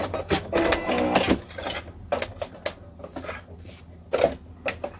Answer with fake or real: real